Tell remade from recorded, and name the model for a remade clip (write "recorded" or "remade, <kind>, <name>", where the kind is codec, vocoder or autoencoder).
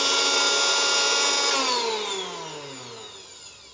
recorded